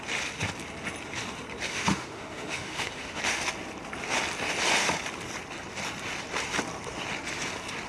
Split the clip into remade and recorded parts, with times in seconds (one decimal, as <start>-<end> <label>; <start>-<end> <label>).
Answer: 0.0-1.7 recorded; 1.7-3.2 remade; 3.2-7.9 recorded